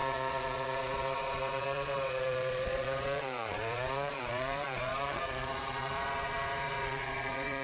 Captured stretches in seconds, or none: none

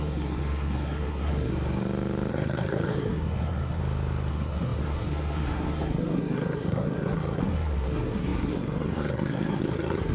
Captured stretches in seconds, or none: 1.5-2.3; 3.8-4.3